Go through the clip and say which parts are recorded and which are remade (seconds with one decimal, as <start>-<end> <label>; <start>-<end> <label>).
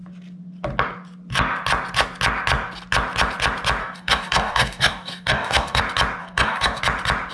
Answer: 0.0-3.8 recorded; 3.8-5.8 remade; 5.8-6.2 recorded; 6.2-6.8 remade; 6.8-7.3 recorded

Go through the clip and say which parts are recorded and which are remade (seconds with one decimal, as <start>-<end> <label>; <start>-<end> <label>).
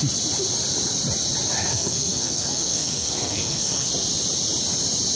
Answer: 0.0-1.7 recorded; 1.7-3.9 remade; 3.9-5.2 recorded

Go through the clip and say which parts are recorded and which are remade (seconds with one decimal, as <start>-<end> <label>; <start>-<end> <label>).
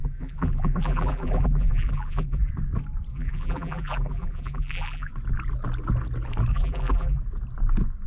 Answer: 0.0-2.5 remade; 2.5-3.1 recorded; 3.1-5.1 remade; 5.1-6.5 recorded; 6.5-7.2 remade; 7.2-8.1 recorded